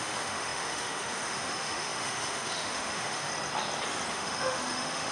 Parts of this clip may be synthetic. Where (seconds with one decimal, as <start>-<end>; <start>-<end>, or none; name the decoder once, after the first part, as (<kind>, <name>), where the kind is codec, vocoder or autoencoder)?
0.0-3.3 (autoencoder, DAC-VAE); 4.1-5.1